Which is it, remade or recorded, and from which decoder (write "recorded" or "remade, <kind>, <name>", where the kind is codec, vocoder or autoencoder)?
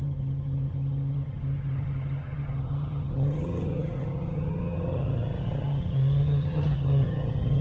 remade, vocoder, HiFi-GAN